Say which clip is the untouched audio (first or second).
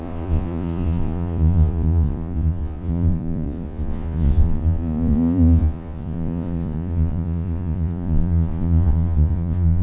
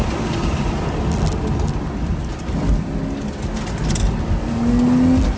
second